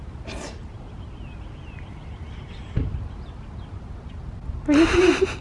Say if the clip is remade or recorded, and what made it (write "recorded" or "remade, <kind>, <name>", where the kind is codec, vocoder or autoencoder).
recorded